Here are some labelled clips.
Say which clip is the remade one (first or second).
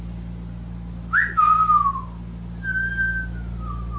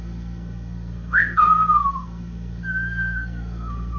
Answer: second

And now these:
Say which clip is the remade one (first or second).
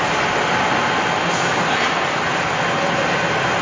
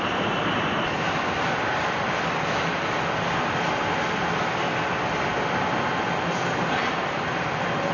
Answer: second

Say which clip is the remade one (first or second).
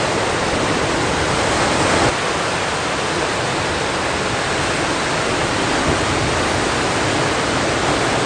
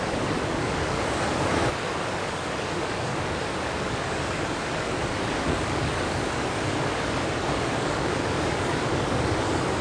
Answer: second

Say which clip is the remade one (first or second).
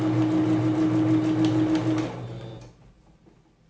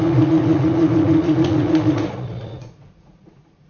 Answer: second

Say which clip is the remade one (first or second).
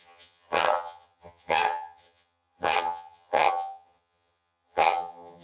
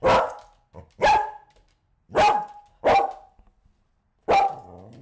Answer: first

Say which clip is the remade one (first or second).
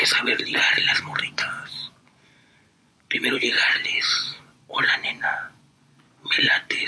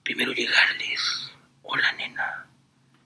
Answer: first